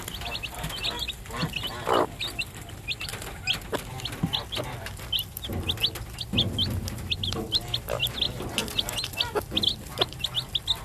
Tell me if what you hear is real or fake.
real